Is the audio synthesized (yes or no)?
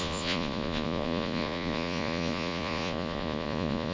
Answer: yes